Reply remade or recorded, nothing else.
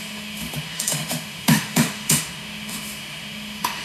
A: remade